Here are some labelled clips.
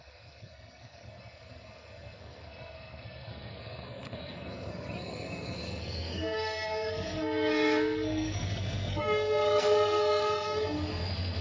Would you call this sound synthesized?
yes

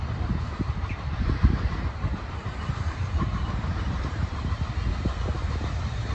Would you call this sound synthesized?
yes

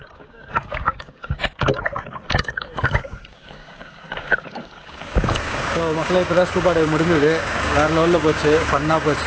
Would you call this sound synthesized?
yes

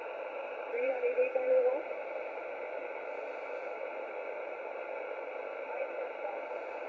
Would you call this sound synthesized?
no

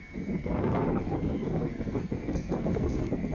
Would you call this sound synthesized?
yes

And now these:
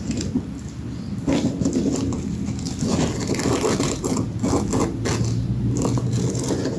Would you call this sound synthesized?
no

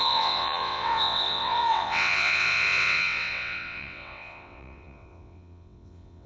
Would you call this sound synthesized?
yes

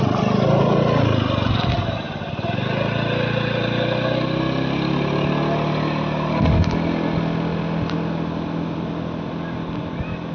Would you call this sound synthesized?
no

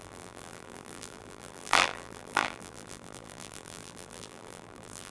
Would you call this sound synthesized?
yes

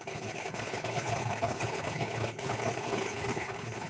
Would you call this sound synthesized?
yes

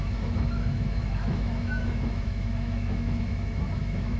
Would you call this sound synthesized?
yes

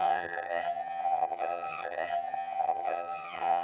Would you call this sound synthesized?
yes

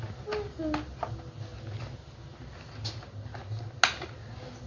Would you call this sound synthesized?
no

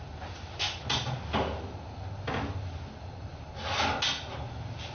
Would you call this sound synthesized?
no